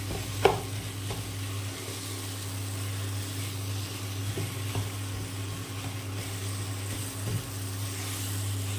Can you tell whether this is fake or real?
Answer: real